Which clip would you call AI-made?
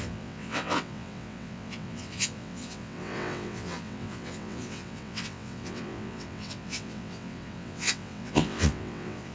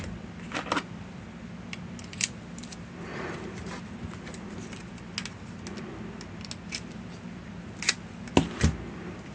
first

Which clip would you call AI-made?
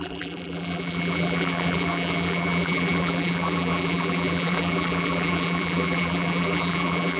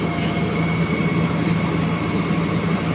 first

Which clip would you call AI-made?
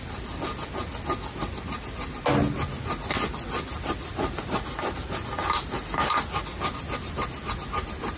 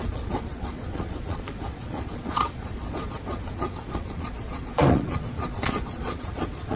second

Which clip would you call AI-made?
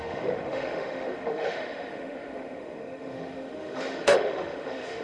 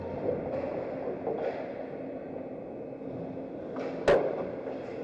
first